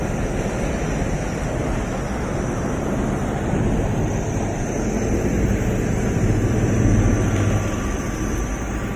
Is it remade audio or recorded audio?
recorded